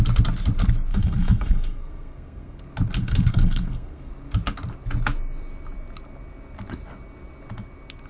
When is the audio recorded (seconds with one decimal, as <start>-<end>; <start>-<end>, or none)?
0.0-0.9; 2.6-3.0; 4.1-8.1